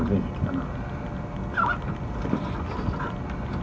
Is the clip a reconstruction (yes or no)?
no